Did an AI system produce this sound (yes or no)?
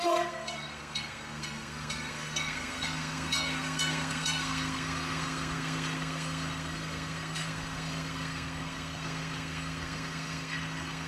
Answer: yes